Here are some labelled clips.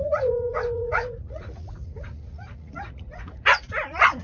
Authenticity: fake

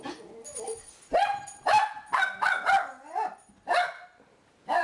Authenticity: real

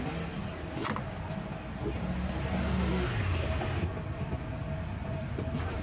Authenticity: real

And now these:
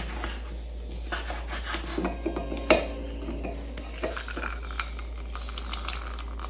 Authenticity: real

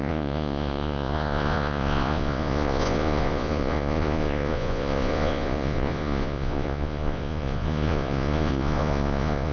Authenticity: fake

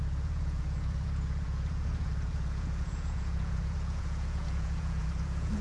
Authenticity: fake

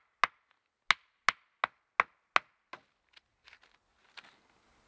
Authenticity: real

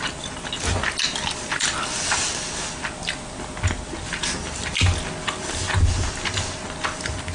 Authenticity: real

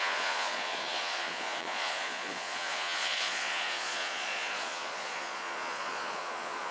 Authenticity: fake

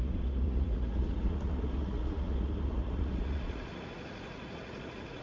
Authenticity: fake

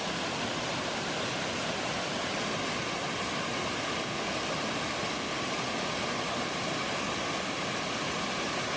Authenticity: real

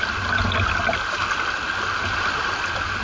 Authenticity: real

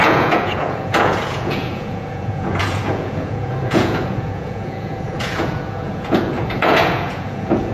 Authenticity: fake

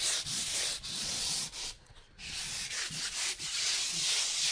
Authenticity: fake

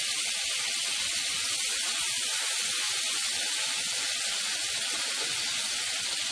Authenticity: fake